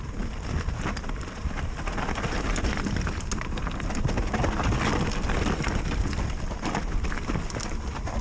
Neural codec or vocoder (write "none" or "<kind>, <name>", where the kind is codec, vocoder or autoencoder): none